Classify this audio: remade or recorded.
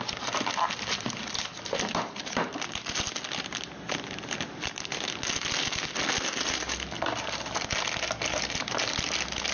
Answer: recorded